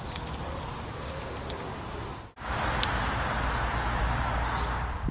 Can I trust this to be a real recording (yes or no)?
yes